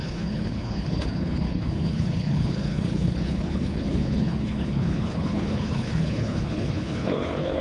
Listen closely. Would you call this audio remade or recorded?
remade